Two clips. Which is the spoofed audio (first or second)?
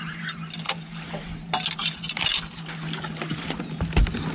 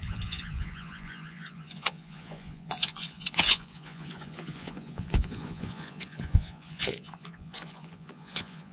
second